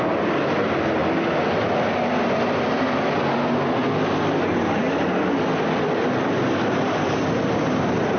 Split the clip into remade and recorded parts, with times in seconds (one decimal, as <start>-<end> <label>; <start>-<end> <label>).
0.0-8.2 recorded